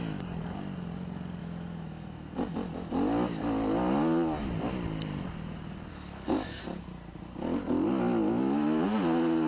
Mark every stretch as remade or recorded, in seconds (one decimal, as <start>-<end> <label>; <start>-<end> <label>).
0.0-1.4 recorded; 1.4-2.3 remade; 2.3-5.9 recorded; 5.9-6.6 remade; 6.6-9.5 recorded